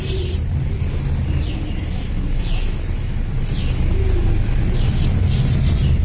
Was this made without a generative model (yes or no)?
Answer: yes